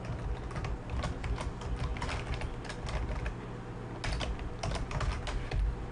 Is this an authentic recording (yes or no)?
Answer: yes